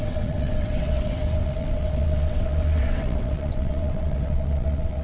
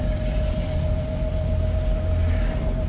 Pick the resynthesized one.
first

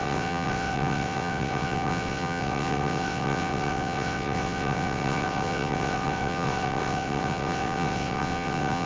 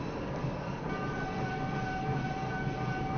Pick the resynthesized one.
first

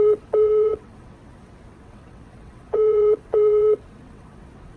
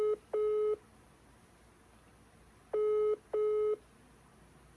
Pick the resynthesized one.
first